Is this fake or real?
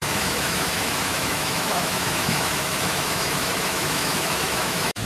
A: fake